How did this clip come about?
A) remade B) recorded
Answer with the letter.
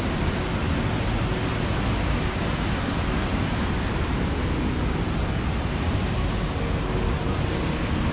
B